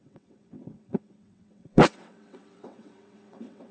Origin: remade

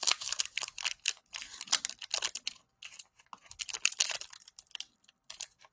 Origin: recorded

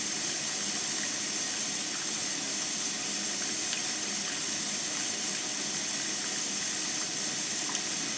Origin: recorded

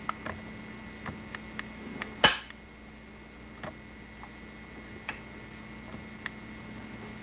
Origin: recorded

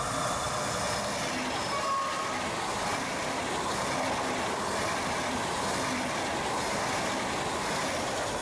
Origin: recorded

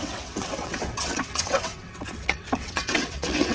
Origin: remade